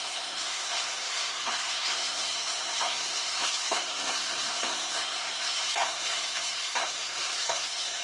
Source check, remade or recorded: remade